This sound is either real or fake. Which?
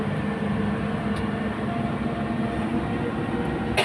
real